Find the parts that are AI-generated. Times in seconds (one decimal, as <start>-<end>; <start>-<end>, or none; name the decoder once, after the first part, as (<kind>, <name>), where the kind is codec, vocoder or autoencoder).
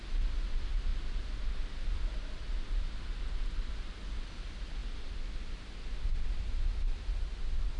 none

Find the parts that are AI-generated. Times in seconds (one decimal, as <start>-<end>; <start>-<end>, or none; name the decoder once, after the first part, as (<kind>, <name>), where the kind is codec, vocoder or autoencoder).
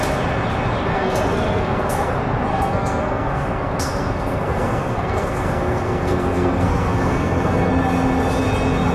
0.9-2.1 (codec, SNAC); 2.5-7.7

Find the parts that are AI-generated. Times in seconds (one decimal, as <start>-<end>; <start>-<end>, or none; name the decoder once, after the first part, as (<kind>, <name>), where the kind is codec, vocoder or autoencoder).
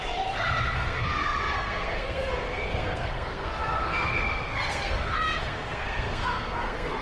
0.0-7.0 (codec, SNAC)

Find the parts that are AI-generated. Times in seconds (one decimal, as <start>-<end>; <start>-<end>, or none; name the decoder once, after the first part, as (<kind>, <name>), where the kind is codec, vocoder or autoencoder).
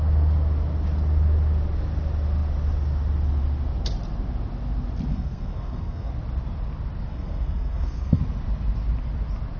5.1-6.1 (codec, SNAC); 7.1-8.2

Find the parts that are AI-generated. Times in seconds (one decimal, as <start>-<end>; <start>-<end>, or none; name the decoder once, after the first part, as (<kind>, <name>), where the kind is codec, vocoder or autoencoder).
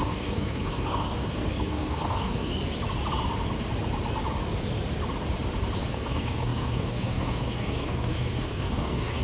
0.0-2.5 (codec, SNAC); 5.9-9.2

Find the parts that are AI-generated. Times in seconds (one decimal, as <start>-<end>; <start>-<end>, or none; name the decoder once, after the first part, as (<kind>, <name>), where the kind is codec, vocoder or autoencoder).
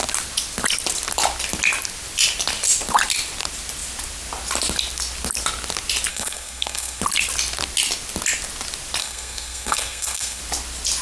6.1-7.0 (codec, SNAC); 9.0-10.4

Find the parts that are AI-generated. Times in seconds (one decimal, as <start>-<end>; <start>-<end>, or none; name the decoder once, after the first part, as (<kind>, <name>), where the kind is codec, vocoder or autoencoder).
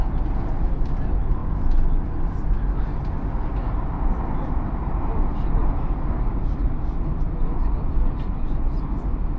none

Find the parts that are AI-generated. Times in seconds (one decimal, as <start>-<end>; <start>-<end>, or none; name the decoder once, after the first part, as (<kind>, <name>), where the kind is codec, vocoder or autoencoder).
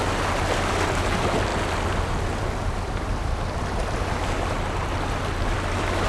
none